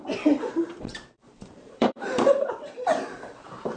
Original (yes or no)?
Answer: no